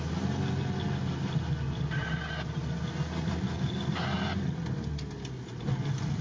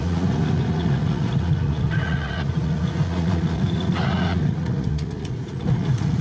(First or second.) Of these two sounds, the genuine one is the first